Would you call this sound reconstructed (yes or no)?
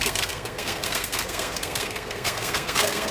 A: yes